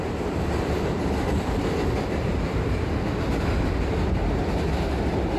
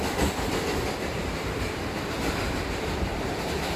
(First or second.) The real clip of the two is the first